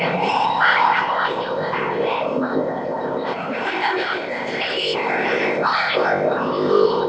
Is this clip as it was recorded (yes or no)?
no